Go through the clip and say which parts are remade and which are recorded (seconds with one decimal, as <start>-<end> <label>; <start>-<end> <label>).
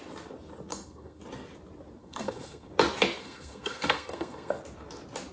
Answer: 0.0-0.7 recorded; 0.7-1.2 remade; 1.2-2.0 recorded; 2.0-2.7 remade; 2.7-3.2 recorded; 3.2-4.6 remade; 4.6-5.3 recorded